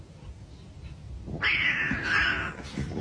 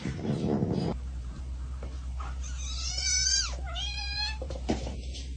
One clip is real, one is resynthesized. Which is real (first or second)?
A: first